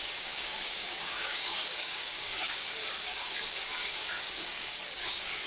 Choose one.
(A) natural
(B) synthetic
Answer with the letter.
B